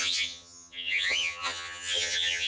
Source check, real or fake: fake